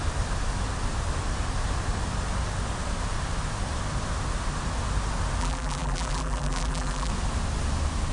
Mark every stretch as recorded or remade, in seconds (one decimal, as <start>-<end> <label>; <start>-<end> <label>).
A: 0.0-5.4 recorded; 5.4-7.1 remade; 7.1-8.1 recorded